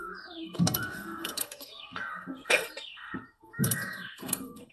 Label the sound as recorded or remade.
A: remade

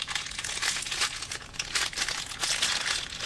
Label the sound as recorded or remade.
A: remade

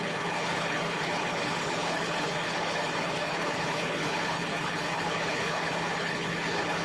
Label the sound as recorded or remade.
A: remade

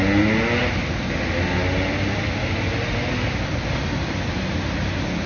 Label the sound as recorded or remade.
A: recorded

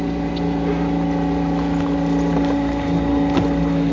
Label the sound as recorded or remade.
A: recorded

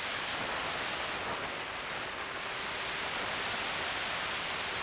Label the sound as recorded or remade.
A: recorded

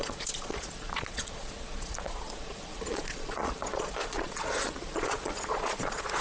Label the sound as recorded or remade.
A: remade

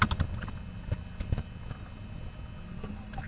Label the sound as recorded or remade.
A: recorded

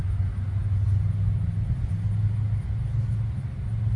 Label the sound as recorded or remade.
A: recorded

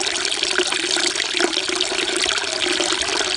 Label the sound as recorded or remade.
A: recorded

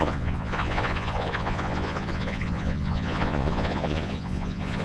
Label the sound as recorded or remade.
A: remade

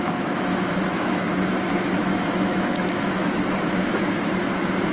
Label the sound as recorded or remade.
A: remade